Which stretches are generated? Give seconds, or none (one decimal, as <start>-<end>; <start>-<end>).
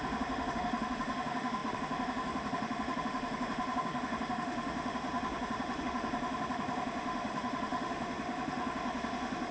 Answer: 0.0-9.5